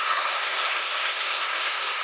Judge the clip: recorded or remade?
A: remade